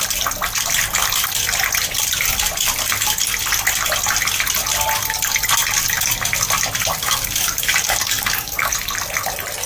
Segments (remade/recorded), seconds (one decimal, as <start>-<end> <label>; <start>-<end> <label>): 0.0-6.9 recorded; 6.9-8.7 remade; 8.7-9.7 recorded